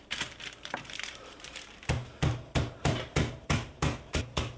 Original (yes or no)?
no